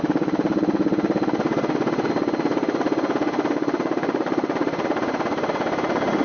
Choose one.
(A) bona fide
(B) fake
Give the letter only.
A